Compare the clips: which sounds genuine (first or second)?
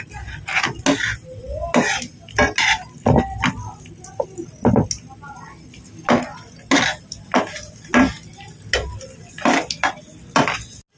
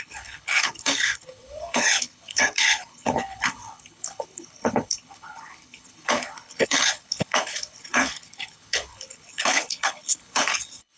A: first